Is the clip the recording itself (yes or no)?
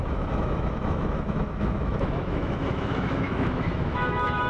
no